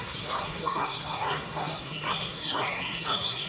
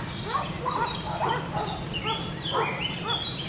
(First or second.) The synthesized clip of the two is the first